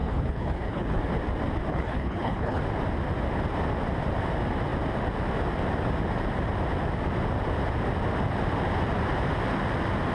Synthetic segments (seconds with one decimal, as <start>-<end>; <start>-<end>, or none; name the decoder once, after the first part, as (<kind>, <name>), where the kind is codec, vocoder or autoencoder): 0.0-1.0 (codec, HILCodec); 1.7-2.6